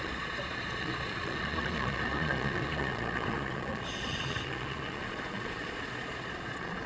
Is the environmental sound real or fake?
fake